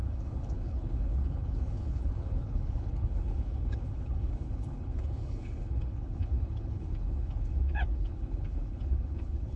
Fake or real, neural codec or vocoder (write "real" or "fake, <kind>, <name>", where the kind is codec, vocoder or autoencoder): fake, codec, HILCodec